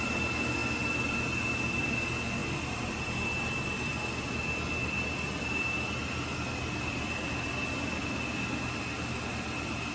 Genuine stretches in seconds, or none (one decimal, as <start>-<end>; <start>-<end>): 0.0-9.9